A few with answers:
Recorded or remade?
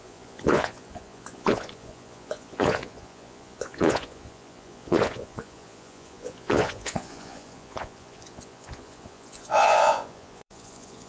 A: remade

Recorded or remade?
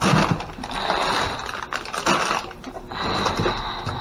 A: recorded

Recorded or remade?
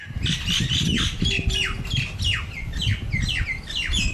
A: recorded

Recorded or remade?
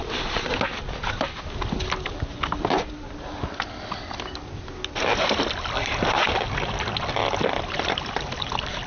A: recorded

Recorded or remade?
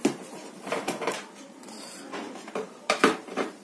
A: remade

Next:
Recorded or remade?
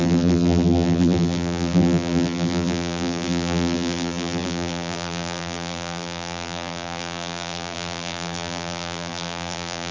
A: remade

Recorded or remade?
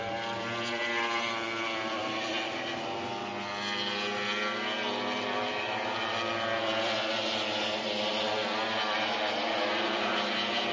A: recorded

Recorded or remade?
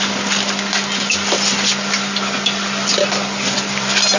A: recorded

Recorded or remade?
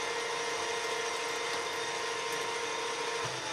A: recorded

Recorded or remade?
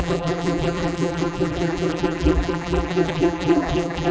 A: remade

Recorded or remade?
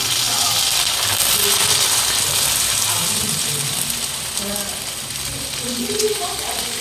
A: recorded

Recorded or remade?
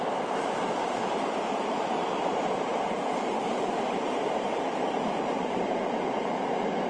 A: remade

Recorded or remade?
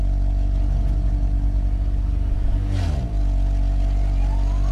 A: recorded